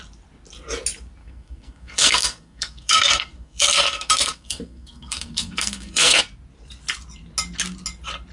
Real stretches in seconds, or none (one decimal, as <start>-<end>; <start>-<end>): 0.0-1.2; 6.2-8.3